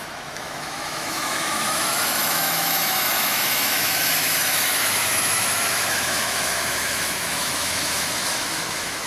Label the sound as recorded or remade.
remade